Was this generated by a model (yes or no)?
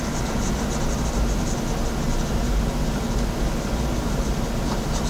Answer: no